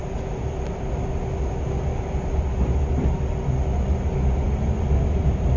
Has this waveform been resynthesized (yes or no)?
no